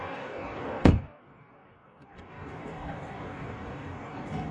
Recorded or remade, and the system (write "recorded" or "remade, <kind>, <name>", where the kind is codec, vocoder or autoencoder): remade, codec, DAC